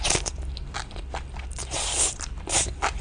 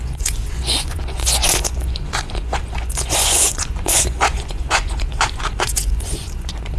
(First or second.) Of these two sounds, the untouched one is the first